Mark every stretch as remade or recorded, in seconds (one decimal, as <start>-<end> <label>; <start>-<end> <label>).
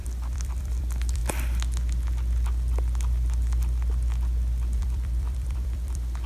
0.0-1.2 remade; 1.2-4.8 recorded; 4.8-6.3 remade